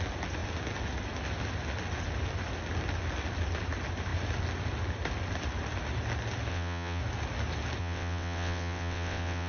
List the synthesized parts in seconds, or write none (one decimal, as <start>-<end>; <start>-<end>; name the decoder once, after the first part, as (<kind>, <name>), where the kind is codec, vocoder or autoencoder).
6.5-7.0 (vocoder, WaveNeXt); 7.8-9.5